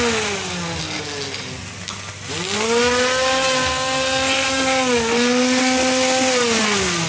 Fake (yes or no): no